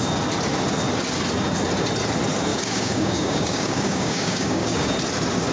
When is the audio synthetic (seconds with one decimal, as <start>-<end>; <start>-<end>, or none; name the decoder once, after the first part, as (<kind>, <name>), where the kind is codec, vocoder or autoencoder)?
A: 2.5-4.9 (codec, DAC)